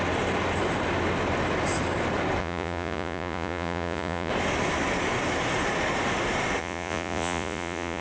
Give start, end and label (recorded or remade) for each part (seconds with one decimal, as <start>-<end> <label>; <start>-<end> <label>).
0.0-2.4 recorded; 2.4-4.3 remade; 4.3-6.6 recorded; 6.6-8.0 remade